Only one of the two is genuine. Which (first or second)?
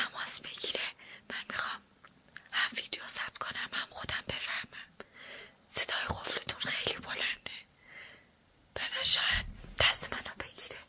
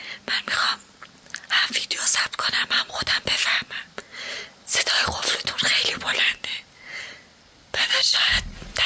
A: second